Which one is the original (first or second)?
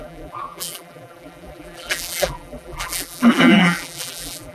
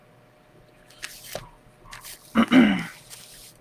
second